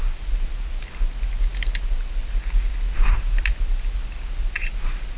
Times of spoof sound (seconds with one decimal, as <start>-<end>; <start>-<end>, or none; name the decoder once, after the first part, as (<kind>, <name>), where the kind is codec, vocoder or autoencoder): none